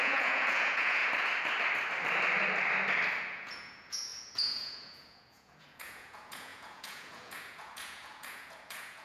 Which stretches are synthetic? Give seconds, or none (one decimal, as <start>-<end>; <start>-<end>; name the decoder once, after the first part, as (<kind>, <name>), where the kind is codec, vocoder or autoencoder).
0.0-1.0 (vocoder, Vocos); 3.2-9.0